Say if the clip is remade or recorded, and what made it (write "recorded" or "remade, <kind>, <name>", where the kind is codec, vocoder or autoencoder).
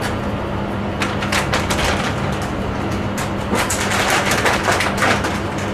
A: recorded